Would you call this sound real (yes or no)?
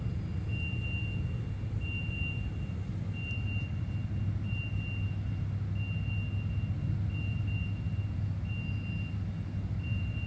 yes